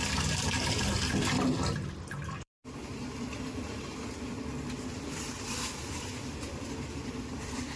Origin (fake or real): fake